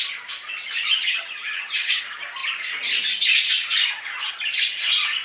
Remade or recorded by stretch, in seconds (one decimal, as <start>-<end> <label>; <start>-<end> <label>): 0.0-0.8 recorded; 0.8-2.0 remade; 2.0-5.2 recorded